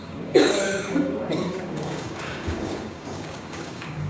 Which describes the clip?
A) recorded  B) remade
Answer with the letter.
B